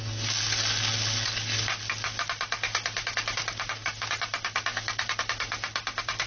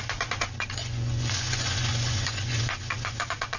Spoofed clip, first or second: second